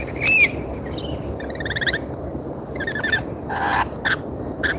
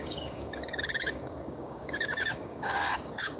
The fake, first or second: second